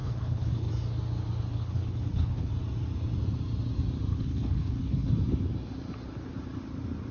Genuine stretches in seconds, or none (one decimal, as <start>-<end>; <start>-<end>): 0.7-1.5; 2.5-4.1; 5.1-7.1